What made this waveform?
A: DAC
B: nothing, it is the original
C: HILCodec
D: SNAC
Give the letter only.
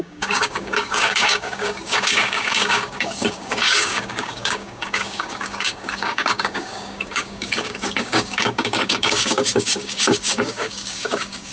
A